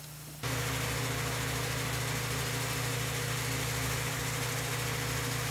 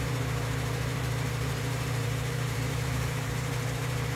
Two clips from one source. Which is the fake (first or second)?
second